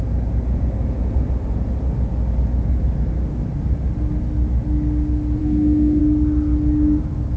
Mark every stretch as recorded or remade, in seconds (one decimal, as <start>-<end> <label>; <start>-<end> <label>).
0.0-5.4 recorded; 5.4-6.0 remade; 6.0-7.4 recorded